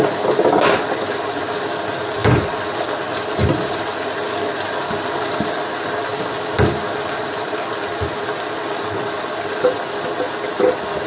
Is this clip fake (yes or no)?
no